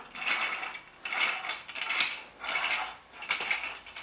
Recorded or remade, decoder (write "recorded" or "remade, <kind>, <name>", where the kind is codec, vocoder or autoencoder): recorded